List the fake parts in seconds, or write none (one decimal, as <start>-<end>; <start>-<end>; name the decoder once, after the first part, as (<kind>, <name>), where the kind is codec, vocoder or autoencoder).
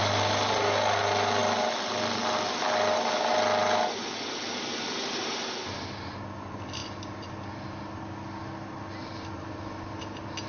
none